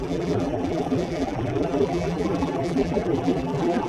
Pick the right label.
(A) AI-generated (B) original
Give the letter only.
A